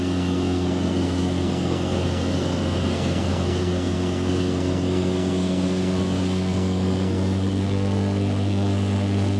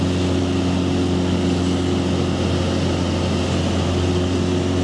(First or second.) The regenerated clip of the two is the first